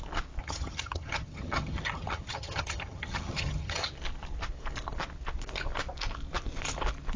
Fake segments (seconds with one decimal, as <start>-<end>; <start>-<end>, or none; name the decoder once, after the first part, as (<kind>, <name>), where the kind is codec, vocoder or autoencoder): 0.4-3.9 (vocoder, HiFi-GAN)